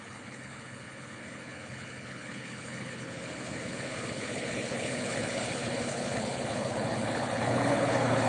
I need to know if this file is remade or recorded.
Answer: remade